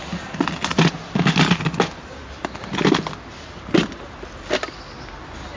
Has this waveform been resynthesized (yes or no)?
no